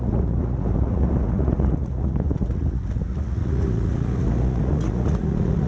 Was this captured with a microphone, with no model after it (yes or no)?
no